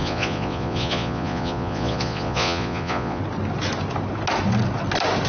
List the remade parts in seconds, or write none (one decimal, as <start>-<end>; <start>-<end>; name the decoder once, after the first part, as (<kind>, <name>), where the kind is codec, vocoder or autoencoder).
0.0-3.2 (vocoder, Vocos)